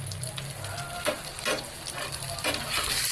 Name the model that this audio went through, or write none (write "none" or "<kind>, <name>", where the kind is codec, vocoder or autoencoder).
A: none